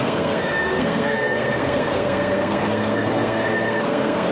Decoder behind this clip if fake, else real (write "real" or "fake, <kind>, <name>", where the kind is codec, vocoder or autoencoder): fake, codec, SNAC